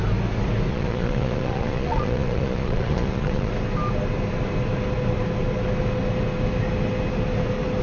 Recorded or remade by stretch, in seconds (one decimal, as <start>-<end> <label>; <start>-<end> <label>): 0.0-0.7 recorded; 0.7-3.5 remade; 3.5-7.8 recorded